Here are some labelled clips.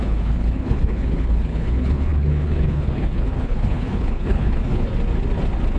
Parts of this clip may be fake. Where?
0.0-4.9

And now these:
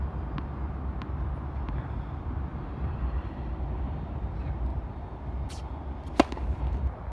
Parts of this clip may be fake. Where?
2.5-3.6; 4.7-5.8

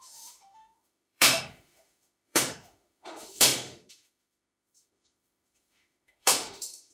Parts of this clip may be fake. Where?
0.0-6.9

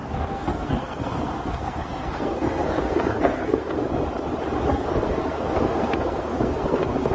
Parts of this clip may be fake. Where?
0.0-3.9; 4.7-7.1